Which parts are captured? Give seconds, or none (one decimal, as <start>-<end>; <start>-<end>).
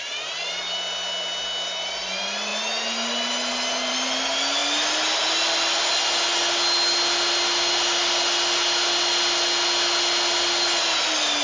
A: 0.0-11.4